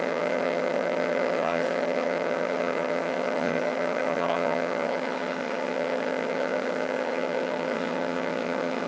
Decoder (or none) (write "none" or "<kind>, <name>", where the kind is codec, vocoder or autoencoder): vocoder, HiFi-GAN